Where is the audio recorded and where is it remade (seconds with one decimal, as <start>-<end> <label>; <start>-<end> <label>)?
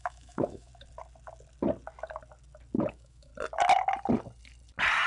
0.0-0.7 remade; 0.7-2.9 recorded; 2.9-3.3 remade; 3.3-5.1 recorded